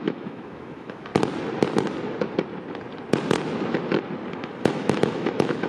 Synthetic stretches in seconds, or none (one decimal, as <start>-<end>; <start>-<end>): 0.0-1.1; 4.3-5.7

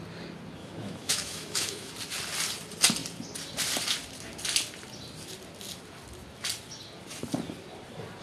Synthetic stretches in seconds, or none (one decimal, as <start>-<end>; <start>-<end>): 0.6-1.9

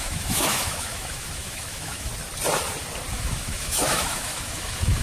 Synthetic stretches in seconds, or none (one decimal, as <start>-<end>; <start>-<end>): 0.0-2.1; 3.1-5.0